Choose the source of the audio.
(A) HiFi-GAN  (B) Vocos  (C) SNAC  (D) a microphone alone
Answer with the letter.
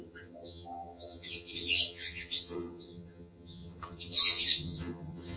A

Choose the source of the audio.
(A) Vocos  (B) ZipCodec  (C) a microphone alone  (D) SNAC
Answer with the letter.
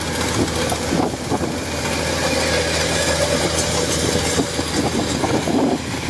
C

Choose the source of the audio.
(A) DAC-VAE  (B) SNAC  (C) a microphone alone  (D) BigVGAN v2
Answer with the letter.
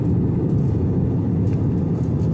C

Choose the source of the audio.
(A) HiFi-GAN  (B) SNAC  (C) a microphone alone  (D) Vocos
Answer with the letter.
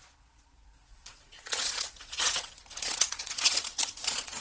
D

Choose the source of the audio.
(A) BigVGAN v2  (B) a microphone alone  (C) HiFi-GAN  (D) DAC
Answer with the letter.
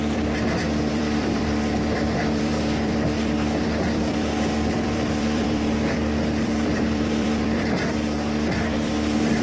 A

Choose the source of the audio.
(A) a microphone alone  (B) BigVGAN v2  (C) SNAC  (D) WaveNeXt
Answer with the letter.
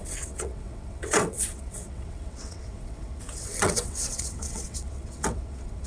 D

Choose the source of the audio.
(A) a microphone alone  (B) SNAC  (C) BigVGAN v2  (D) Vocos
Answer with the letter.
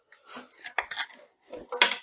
A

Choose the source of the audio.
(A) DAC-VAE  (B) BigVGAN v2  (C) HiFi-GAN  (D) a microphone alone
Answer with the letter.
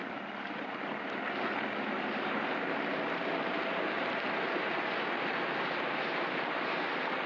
D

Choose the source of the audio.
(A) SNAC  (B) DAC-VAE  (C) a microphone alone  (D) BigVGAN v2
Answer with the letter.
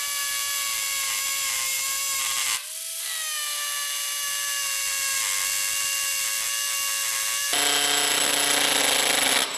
C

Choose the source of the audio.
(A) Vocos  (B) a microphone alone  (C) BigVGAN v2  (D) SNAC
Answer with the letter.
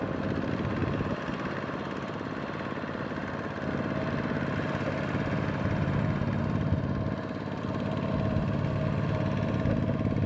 B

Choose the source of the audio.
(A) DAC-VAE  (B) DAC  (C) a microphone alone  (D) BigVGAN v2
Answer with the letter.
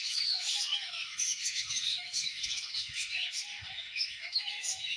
A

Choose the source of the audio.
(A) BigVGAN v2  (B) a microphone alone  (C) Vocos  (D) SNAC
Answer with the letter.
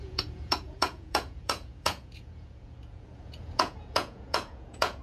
C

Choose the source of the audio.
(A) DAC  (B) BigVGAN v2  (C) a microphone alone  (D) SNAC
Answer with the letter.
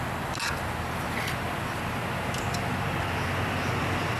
C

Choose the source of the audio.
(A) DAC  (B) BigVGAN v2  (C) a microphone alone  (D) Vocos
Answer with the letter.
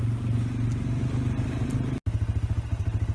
C